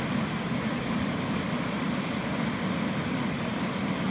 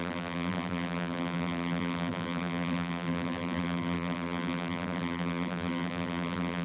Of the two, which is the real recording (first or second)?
first